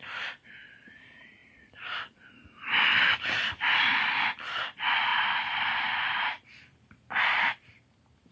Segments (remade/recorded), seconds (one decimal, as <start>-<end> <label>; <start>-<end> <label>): 0.0-8.3 remade